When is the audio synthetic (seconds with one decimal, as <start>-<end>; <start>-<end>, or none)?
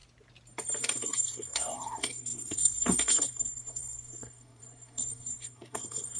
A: 0.8-6.2